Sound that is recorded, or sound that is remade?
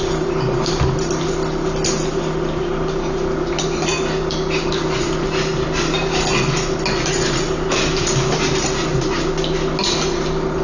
recorded